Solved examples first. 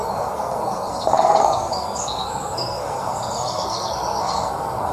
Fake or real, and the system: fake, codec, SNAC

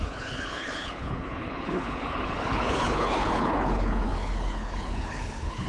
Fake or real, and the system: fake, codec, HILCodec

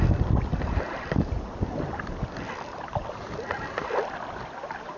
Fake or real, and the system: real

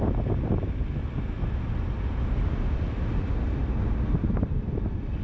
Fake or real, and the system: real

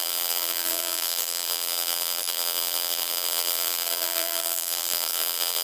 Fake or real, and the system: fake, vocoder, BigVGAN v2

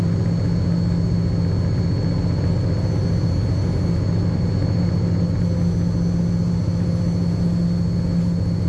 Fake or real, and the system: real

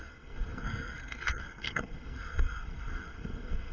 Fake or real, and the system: fake, codec, SNAC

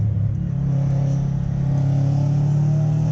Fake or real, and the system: real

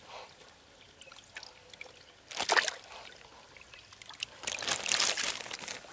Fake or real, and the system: real